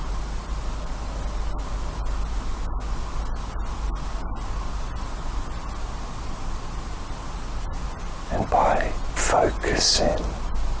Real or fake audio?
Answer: real